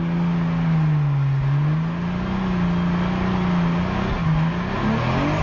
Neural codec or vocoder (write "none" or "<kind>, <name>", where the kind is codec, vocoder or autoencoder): none